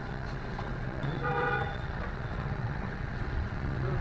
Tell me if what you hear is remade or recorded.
remade